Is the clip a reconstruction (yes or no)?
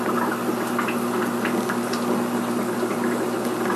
no